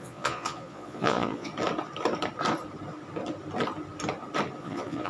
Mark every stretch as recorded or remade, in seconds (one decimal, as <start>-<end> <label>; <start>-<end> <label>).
0.0-1.5 remade; 1.5-4.6 recorded; 4.6-5.1 remade

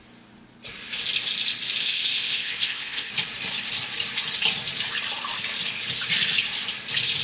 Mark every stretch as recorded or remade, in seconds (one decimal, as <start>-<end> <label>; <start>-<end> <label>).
0.0-1.8 recorded; 1.8-3.1 remade; 3.1-7.2 recorded

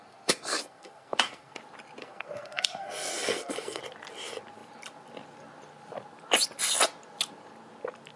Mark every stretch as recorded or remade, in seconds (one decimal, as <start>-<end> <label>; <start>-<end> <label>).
0.0-1.6 remade; 1.6-2.0 recorded; 2.0-3.8 remade; 3.8-8.2 recorded